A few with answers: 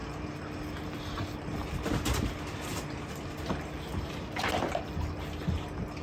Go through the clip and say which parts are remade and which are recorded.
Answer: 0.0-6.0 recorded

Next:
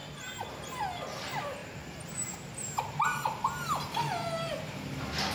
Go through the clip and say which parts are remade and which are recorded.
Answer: 0.0-0.7 recorded; 0.7-5.3 remade

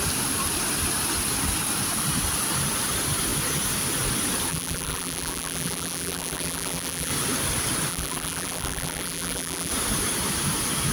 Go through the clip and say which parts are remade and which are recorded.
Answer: 0.0-4.5 recorded; 4.5-7.1 remade; 7.1-7.9 recorded; 7.9-9.7 remade; 9.7-10.9 recorded

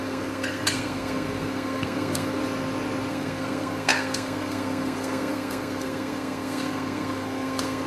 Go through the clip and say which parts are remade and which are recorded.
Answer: 0.0-2.4 remade; 2.4-3.1 recorded; 3.1-7.9 remade

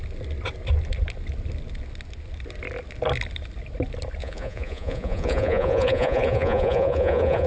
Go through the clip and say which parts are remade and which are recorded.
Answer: 0.0-4.2 recorded; 4.2-7.5 remade

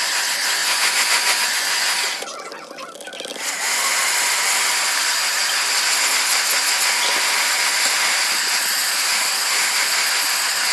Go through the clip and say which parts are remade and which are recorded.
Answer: 0.0-0.6 recorded; 0.6-1.9 remade; 1.9-10.7 recorded

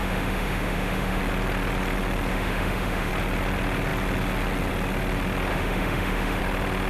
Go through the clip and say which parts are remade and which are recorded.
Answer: 0.0-1.2 remade; 1.2-2.3 recorded; 2.3-3.1 remade; 3.1-5.5 recorded; 5.5-6.4 remade; 6.4-6.9 recorded

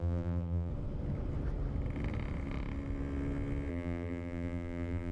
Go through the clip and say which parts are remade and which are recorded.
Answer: 0.0-0.7 remade; 0.7-3.7 recorded; 3.7-5.1 remade